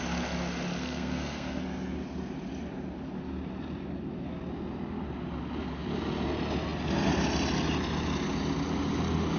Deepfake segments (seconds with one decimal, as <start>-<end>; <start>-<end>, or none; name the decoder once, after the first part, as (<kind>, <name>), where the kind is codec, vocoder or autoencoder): 0.8-1.6 (codec, SNAC)